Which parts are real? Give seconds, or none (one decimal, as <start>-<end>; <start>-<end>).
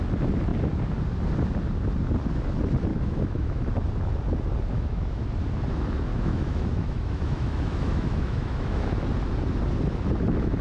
0.0-2.9; 3.7-4.7; 5.2-6.1; 8.8-10.6